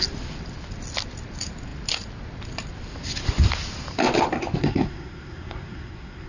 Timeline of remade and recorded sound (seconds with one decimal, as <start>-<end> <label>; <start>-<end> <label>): 0.0-4.6 recorded; 4.6-6.3 remade